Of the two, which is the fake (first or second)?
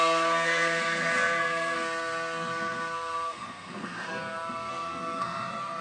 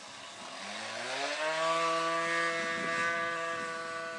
first